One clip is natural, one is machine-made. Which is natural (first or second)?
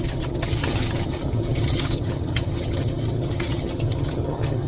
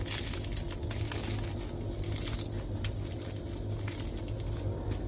second